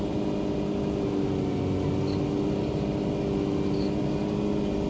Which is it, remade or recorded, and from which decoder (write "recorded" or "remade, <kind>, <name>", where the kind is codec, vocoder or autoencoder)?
recorded